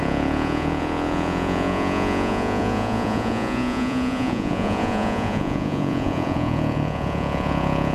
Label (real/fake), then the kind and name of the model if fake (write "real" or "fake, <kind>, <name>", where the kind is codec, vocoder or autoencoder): fake, vocoder, Vocos